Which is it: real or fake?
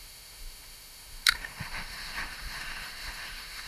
fake